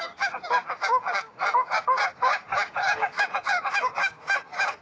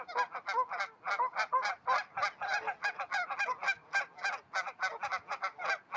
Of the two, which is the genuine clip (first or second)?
second